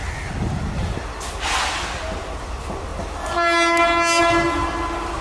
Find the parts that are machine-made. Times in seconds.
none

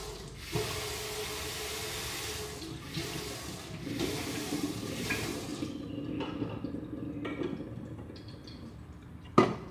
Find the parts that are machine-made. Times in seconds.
3.7-5.5 (vocoder, BigVGAN v2); 8.2-9.7

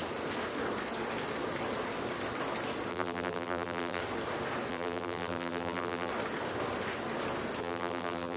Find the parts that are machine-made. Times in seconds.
2.9-4.0 (vocoder, BigVGAN v2); 4.7-6.1; 7.6-8.4

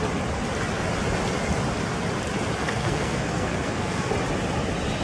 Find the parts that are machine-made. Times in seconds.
2.6-4.1 (codec, SNAC)

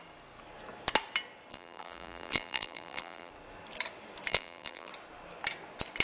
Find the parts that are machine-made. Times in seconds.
1.5-3.3 (vocoder, BigVGAN v2); 4.3-4.9

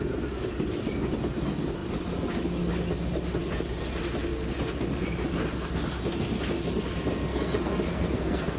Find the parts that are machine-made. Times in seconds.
7.3-8.6 (codec, SNAC)